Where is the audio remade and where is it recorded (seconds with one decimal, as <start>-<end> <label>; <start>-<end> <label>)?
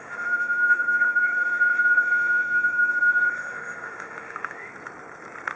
0.0-4.7 remade; 4.7-5.6 recorded